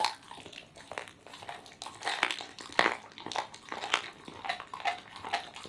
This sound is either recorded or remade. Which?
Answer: recorded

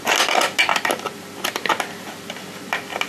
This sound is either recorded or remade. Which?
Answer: recorded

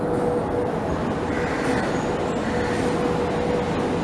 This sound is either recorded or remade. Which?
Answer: recorded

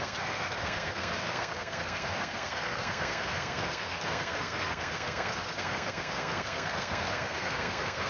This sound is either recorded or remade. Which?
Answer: remade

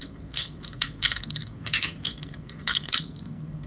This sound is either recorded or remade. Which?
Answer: remade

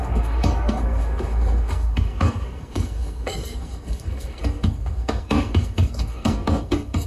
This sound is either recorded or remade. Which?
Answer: remade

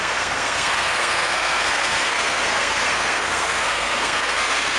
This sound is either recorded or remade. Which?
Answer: remade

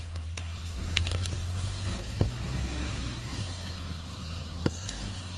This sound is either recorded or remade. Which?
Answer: remade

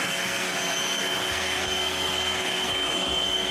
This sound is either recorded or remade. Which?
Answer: remade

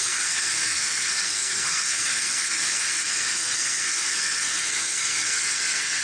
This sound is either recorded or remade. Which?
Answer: remade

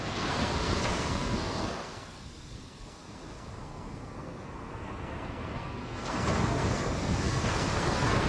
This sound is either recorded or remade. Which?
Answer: remade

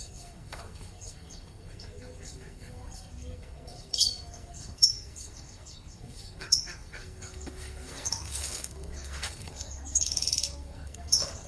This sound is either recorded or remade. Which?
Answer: remade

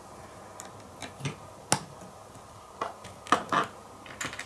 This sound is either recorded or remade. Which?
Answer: recorded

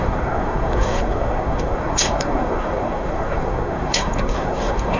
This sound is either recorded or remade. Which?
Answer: remade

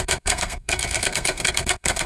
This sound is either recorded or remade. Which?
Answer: remade